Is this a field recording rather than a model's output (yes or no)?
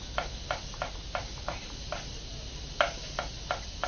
yes